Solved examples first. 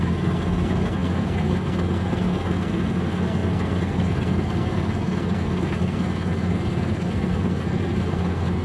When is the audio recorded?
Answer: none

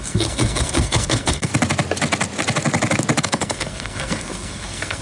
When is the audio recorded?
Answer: 1.5-3.2

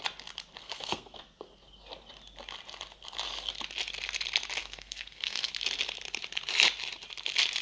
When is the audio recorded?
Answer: 0.0-0.6; 1.2-4.6; 5.5-7.6

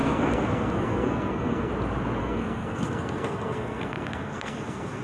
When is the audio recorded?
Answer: 1.7-2.2